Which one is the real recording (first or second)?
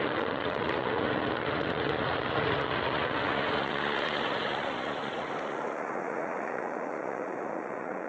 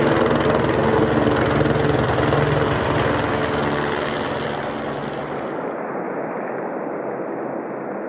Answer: second